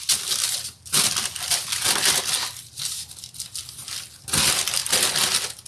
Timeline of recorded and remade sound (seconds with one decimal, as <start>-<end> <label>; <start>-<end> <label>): 0.0-5.7 recorded